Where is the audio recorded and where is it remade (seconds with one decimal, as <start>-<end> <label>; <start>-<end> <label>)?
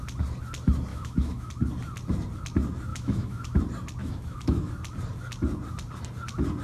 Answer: 0.0-0.9 recorded; 0.9-1.5 remade; 1.5-2.9 recorded; 2.9-3.6 remade; 3.6-4.0 recorded; 4.0-4.7 remade; 4.7-6.6 recorded